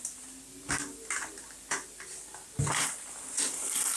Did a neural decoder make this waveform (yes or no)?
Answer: no